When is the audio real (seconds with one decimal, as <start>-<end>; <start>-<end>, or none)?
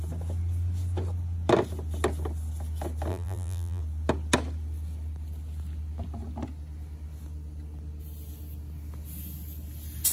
0.0-3.1; 3.8-10.1